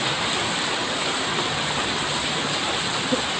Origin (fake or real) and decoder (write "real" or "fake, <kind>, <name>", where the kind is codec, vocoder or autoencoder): real